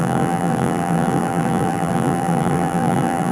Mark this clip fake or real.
fake